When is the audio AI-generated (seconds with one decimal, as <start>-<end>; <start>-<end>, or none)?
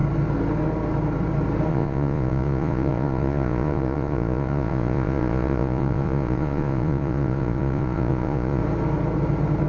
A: 1.7-8.6